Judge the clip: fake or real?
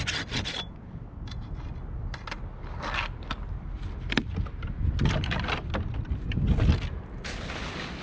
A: real